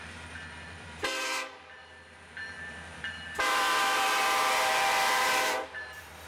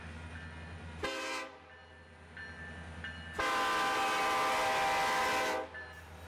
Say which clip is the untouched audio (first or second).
second